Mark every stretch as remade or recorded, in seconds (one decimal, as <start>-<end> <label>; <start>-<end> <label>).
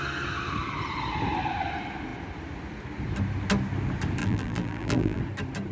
0.0-4.2 recorded; 4.2-5.2 remade; 5.2-5.7 recorded